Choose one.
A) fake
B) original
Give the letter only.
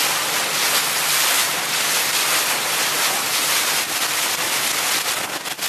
B